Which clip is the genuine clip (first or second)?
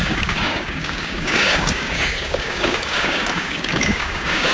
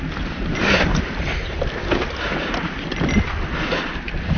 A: second